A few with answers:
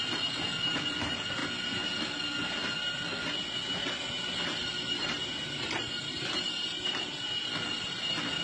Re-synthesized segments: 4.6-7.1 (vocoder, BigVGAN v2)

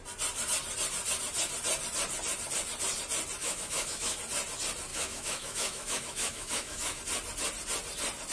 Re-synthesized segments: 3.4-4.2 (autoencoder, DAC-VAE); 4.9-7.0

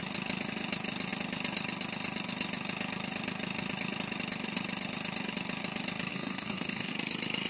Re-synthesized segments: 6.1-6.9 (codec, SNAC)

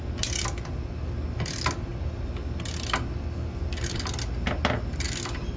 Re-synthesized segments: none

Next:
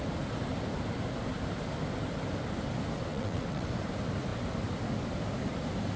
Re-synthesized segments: 3.1-3.7 (vocoder, WaveNeXt)

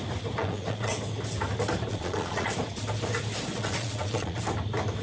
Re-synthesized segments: 0.4-0.9 (vocoder, Vocos); 1.9-2.5; 3.5-4.4